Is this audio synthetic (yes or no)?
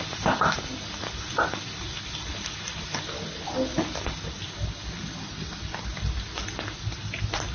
no